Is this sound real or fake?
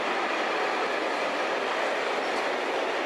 real